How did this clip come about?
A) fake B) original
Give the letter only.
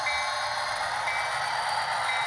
B